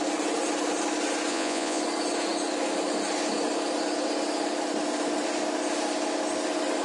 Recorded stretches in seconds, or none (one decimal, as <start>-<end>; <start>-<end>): 0.0-1.3; 1.8-6.8